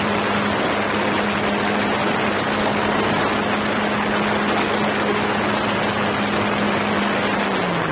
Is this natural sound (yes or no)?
yes